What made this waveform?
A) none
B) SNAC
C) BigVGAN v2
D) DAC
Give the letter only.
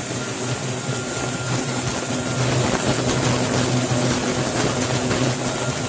A